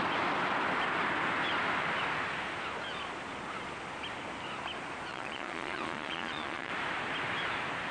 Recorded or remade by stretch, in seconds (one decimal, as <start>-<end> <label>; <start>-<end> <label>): 0.0-5.1 recorded; 5.1-6.7 remade; 6.7-7.9 recorded

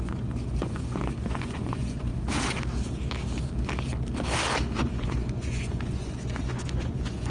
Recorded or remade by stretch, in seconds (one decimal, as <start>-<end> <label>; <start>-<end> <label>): 0.0-2.1 remade; 2.1-4.8 recorded; 4.8-7.3 remade

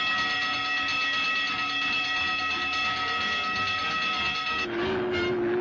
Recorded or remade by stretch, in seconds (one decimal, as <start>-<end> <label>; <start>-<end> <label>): 0.0-5.6 recorded

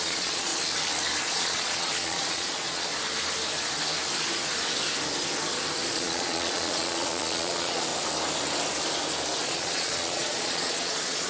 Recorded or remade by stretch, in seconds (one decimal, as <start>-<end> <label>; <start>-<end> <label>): 0.0-0.5 remade; 0.5-1.2 recorded; 1.2-2.9 remade; 2.9-5.9 recorded; 5.9-7.9 remade; 7.9-9.4 recorded; 9.4-11.3 remade

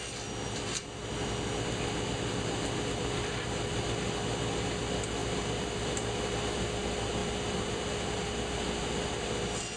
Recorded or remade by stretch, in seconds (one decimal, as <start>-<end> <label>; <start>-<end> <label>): 0.0-9.8 recorded

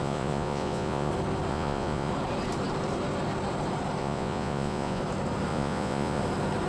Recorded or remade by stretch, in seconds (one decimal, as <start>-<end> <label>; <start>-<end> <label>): 0.0-1.1 remade; 1.1-1.5 recorded; 1.5-2.1 remade; 2.1-4.0 recorded; 4.0-5.0 remade; 5.0-5.5 recorded; 5.5-6.2 remade; 6.2-6.7 recorded